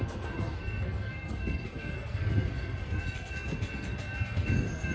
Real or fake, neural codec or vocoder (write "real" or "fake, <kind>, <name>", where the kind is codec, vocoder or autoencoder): fake, codec, SNAC